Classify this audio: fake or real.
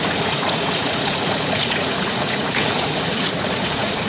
fake